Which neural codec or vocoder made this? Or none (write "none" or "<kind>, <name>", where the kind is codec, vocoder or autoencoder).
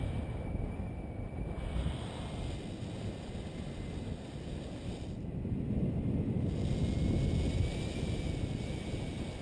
none